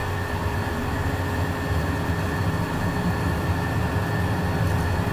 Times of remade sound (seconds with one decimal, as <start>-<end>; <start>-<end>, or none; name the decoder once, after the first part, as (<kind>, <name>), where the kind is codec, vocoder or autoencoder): none